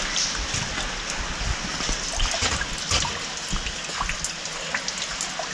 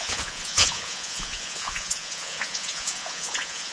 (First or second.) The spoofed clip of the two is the second